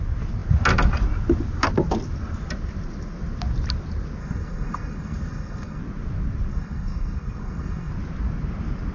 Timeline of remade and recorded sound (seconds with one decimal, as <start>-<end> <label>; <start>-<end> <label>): 0.0-4.2 recorded; 4.2-5.8 remade; 5.8-6.5 recorded; 6.5-7.9 remade; 7.9-8.9 recorded